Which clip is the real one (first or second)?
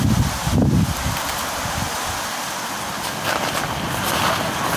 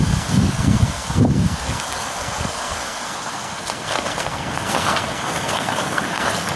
first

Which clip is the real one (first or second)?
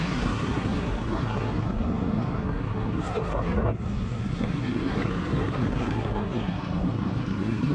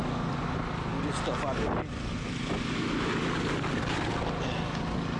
second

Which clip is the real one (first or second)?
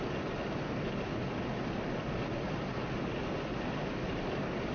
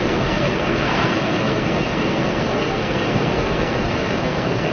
first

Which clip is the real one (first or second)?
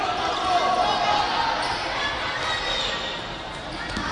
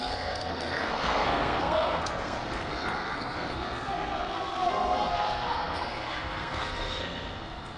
first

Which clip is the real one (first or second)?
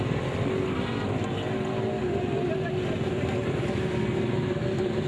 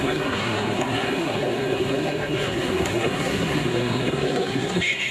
first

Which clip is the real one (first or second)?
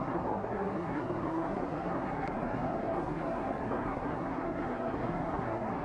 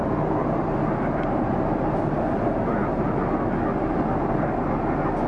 second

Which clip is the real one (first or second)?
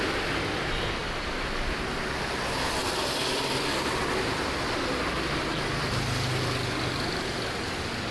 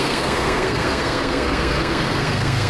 first